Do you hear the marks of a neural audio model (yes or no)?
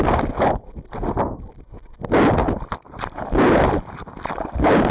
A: no